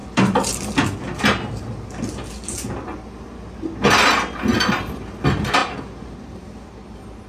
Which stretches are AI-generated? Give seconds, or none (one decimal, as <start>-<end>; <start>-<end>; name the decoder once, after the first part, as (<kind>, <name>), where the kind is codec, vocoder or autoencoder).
none